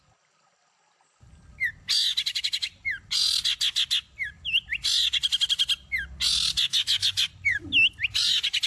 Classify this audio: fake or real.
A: real